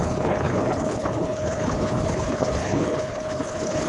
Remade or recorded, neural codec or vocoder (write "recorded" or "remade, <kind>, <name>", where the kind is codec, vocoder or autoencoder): remade, codec, HILCodec